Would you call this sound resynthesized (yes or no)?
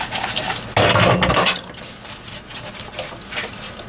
no